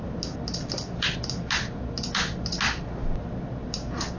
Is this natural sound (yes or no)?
yes